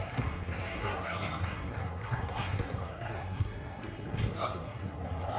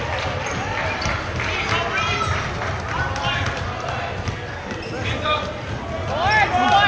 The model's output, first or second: first